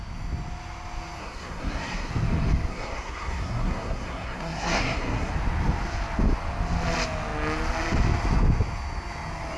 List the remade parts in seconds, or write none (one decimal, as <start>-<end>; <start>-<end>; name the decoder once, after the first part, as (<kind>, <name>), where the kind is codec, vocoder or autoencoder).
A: 1.2-2.1 (codec, SNAC); 2.7-5.3